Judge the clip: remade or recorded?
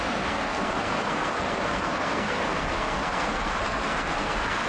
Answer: remade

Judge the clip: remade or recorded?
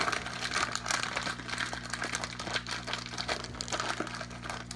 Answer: recorded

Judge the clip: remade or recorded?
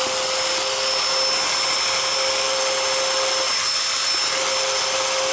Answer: recorded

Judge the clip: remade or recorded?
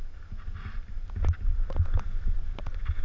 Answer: recorded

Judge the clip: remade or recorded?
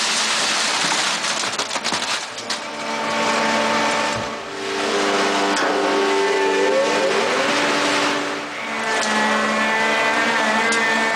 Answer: recorded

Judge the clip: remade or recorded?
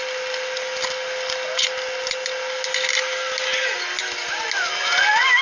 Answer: recorded